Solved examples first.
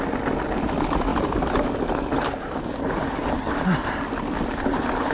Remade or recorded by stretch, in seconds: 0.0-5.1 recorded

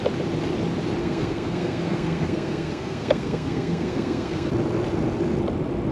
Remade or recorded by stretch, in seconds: 0.0-1.0 recorded; 1.0-4.5 remade; 4.5-5.9 recorded

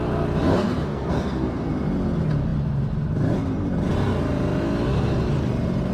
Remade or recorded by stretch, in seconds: 0.0-0.5 recorded; 0.5-1.7 remade; 1.7-5.9 recorded

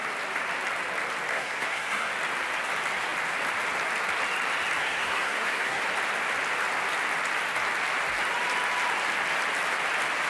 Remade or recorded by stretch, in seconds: 0.0-1.3 recorded; 1.3-2.1 remade; 2.1-4.8 recorded; 4.8-5.8 remade; 5.8-10.3 recorded